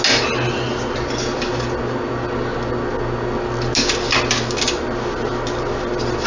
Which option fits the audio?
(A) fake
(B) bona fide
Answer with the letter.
B